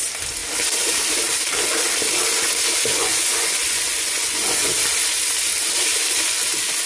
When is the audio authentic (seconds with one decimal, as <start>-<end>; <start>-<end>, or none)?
0.0-2.9; 4.7-6.9